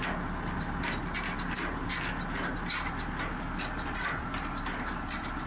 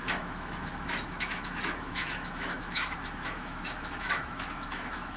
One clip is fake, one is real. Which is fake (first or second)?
second